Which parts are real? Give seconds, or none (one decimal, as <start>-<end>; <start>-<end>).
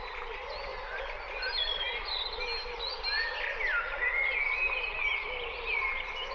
0.0-6.3